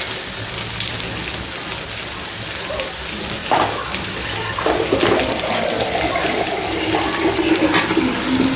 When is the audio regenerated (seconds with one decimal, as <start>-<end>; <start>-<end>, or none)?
none